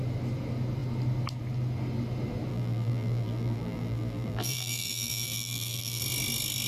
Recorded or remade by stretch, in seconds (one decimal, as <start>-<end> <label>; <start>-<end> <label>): 0.0-2.5 recorded; 2.5-6.0 remade; 6.0-6.7 recorded